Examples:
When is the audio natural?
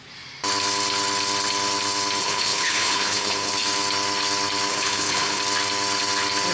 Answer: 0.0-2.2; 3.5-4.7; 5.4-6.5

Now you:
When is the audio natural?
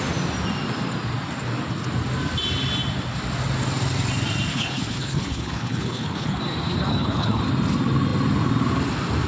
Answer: 0.0-4.5; 6.4-6.9; 7.4-9.3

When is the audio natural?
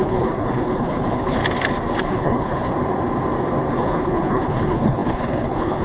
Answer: 1.4-2.0; 2.7-3.7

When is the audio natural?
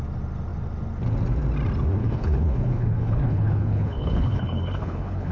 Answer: 0.0-2.0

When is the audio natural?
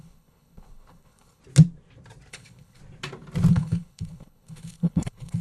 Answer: 1.4-2.3; 2.8-3.5